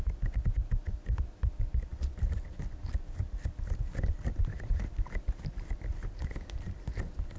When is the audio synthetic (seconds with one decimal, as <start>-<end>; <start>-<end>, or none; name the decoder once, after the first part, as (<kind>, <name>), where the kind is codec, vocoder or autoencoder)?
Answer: none